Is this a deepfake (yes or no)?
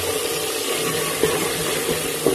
no